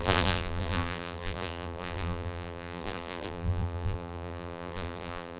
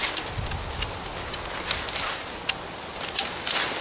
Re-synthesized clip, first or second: first